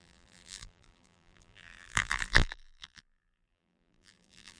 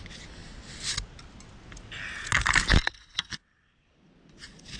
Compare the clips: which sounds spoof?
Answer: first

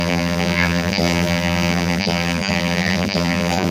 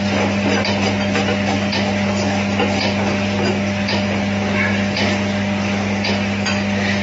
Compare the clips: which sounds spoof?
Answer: first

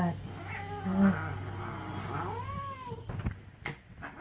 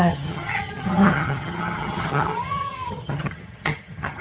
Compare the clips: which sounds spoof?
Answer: second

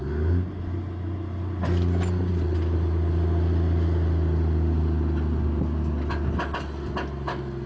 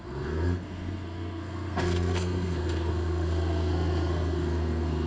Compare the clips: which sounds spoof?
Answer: second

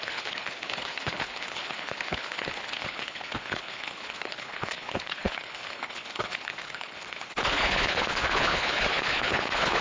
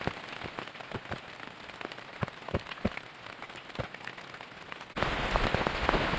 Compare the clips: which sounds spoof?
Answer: first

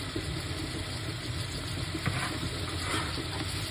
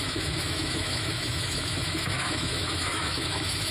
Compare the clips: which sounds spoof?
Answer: second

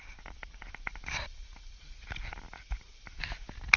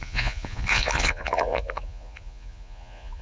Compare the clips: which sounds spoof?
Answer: second